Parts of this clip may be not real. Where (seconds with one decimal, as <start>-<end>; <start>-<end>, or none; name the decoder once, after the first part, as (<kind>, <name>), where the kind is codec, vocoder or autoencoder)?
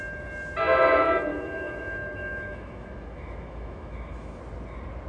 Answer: 1.3-4.4 (autoencoder, DAC-VAE)